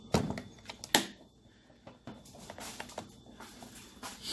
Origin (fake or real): real